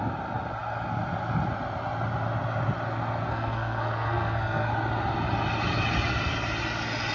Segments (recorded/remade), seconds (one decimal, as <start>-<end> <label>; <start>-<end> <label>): 0.0-3.3 recorded; 3.3-4.7 remade; 4.7-7.1 recorded